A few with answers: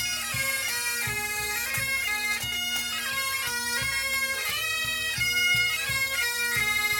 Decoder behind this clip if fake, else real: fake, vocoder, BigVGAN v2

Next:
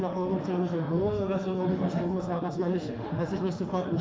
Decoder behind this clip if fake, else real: fake, autoencoder, DAC-VAE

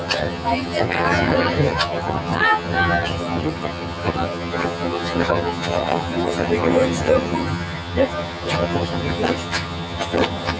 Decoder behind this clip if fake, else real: fake, vocoder, HiFi-GAN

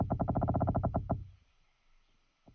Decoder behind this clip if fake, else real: real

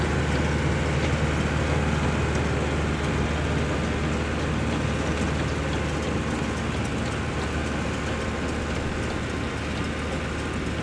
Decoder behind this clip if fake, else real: real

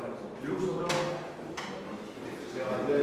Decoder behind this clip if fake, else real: real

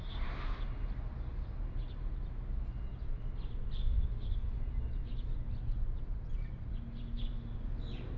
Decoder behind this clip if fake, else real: real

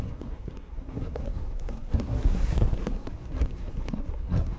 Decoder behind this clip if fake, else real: fake, codec, SNAC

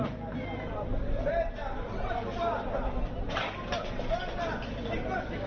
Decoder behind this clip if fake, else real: real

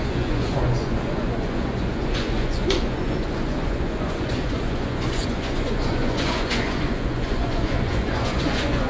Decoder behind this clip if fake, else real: fake, vocoder, Vocos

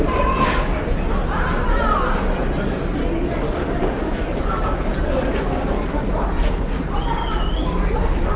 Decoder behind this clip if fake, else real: real